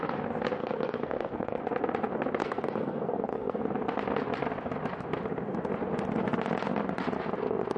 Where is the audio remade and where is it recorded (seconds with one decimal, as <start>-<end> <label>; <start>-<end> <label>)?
0.0-0.6 recorded; 0.6-1.6 remade; 1.6-2.4 recorded; 2.4-3.6 remade; 3.6-7.8 recorded